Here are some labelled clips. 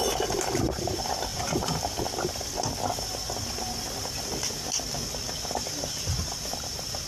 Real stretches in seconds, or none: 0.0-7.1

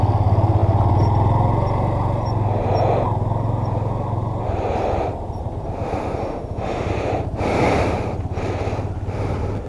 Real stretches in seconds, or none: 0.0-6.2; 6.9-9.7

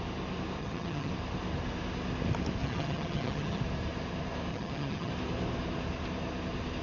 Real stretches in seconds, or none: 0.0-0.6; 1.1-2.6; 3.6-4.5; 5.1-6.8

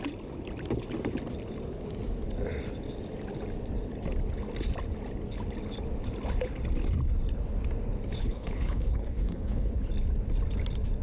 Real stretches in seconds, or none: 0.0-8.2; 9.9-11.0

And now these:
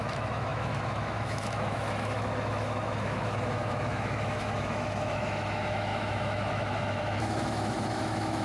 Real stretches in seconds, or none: none